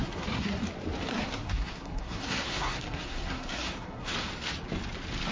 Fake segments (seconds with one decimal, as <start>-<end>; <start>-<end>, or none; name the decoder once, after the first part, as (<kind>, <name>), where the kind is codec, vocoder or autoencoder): 0.0-0.6 (codec, SNAC); 1.1-4.3